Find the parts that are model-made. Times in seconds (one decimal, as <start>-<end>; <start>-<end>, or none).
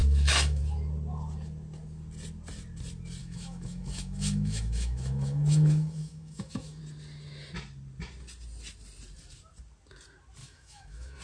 0.0-0.6; 3.2-6.8; 10.4-11.2